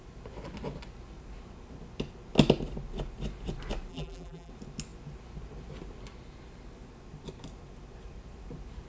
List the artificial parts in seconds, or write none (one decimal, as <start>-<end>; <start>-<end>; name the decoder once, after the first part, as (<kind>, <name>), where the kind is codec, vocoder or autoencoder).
3.9-4.5 (vocoder, BigVGAN v2)